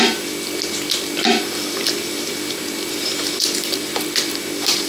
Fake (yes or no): yes